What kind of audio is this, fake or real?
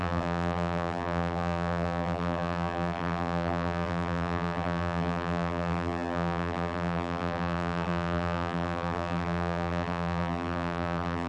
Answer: fake